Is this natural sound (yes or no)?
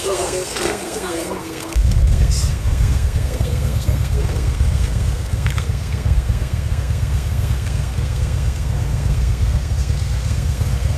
no